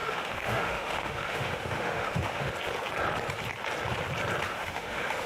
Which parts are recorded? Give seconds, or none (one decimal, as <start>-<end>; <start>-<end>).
2.5-4.5

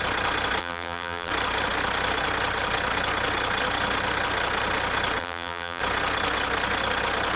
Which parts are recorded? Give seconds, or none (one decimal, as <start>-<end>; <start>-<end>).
0.0-0.6; 1.3-5.2; 5.8-7.4

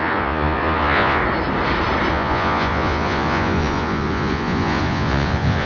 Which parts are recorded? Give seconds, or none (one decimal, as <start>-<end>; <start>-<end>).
1.2-2.1

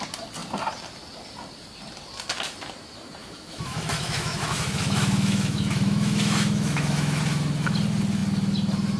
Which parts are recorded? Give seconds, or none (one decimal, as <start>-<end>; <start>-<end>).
0.0-3.2; 7.2-9.0

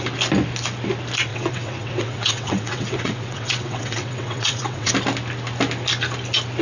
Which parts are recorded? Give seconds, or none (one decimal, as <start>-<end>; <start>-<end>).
0.0-1.3; 4.9-6.6

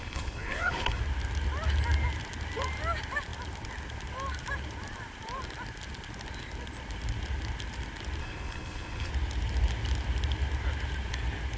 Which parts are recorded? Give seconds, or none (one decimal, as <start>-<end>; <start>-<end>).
1.0-8.2; 9.1-11.6

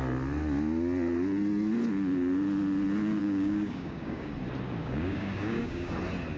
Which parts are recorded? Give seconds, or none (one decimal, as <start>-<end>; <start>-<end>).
0.0-3.2; 4.3-4.8; 5.9-6.4